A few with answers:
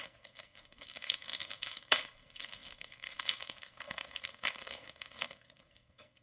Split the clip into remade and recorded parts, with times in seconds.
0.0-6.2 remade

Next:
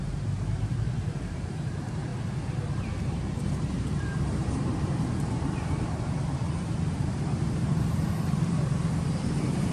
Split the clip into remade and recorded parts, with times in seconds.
0.0-2.1 remade; 2.1-3.0 recorded; 3.0-9.7 remade

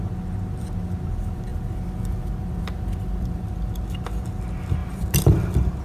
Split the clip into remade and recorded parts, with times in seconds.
0.0-1.5 recorded; 1.5-3.7 remade; 3.7-4.8 recorded; 4.8-5.8 remade

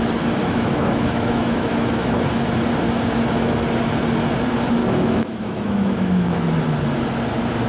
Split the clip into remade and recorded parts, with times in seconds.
0.0-0.4 recorded; 0.4-2.2 remade; 2.2-4.8 recorded; 4.8-6.4 remade; 6.4-7.7 recorded

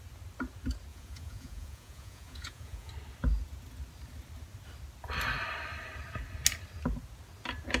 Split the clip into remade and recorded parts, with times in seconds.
0.0-0.9 recorded; 0.9-2.9 remade; 2.9-7.8 recorded

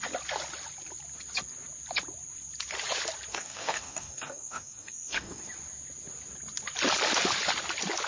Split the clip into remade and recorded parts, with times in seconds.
0.0-3.3 recorded; 3.3-5.4 remade; 5.4-8.1 recorded

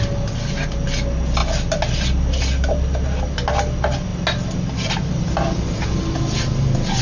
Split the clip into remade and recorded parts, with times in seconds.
0.0-7.0 recorded